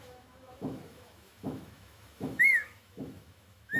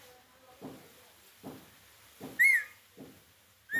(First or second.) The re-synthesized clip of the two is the first